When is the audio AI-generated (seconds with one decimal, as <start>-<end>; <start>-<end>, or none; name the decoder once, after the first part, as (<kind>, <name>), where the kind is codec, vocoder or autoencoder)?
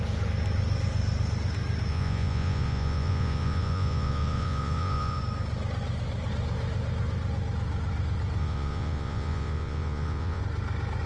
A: 1.9-5.2 (vocoder, Vocos); 8.4-10.4